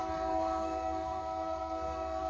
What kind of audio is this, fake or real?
fake